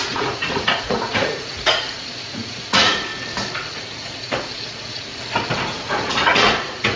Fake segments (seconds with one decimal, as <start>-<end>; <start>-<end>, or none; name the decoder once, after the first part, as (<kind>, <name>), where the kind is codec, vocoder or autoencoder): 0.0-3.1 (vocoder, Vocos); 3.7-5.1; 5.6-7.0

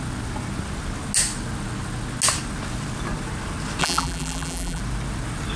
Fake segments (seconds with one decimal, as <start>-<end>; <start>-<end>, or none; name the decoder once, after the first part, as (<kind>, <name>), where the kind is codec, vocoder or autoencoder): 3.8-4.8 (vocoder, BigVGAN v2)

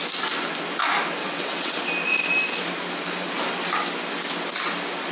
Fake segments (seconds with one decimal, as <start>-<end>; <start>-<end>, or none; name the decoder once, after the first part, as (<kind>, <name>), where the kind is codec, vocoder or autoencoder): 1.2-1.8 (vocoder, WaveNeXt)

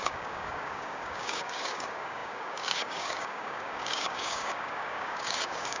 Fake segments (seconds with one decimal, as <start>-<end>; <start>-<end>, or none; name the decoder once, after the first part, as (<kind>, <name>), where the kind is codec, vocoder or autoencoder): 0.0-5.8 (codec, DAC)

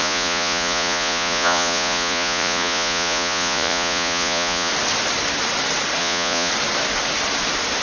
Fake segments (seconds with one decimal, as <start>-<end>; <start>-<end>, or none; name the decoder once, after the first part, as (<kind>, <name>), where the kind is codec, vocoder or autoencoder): 0.0-4.7 (vocoder, Vocos); 6.0-6.5

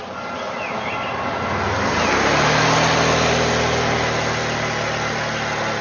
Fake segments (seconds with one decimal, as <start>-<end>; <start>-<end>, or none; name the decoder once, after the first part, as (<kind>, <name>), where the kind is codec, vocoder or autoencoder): none

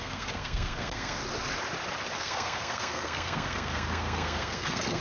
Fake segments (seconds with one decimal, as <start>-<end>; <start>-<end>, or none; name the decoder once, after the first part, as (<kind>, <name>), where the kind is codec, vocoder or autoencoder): 0.0-1.2 (codec, SNAC); 2.2-5.0

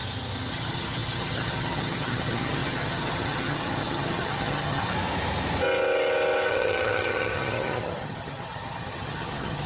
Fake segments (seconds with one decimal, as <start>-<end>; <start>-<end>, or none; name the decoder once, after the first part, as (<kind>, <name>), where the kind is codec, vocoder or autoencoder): 0.5-4.9 (vocoder, HiFi-GAN); 6.5-9.7